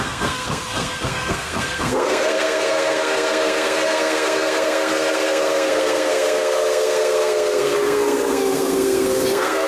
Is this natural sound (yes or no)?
no